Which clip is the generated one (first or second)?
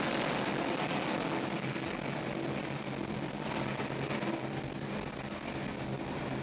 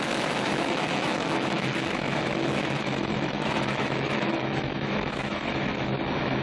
second